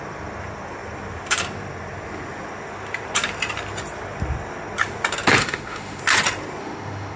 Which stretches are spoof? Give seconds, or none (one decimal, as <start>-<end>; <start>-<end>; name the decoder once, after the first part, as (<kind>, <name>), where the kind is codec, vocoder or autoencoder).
5.4-6.0 (autoencoder, DAC-VAE); 6.6-7.2